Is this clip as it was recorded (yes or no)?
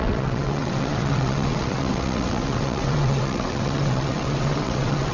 no